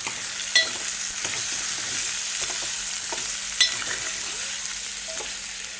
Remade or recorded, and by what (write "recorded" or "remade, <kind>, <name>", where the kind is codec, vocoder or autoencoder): recorded